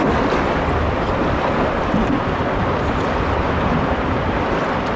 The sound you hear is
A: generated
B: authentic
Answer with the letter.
B